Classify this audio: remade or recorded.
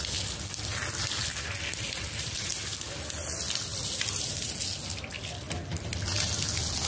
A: recorded